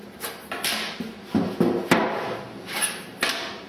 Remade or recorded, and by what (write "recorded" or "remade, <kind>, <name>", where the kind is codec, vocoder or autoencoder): recorded